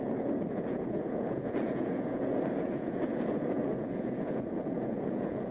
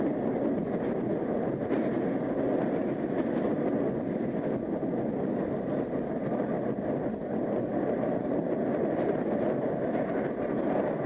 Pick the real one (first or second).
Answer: second